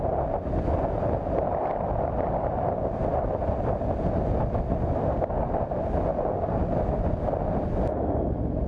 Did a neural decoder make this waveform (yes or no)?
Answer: no